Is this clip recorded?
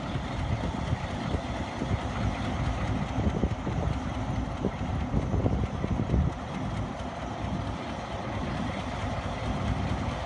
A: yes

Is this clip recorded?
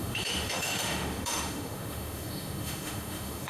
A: no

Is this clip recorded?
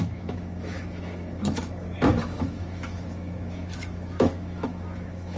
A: no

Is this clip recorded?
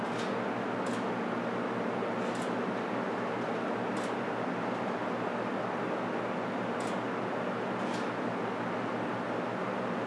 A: yes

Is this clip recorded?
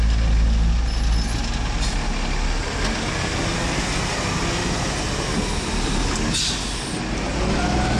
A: yes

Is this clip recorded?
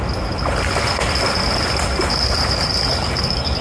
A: yes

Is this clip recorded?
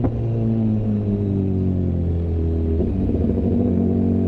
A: yes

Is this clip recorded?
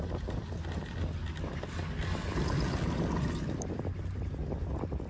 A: yes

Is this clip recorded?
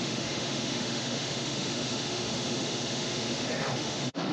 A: no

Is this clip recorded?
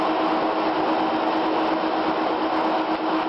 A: yes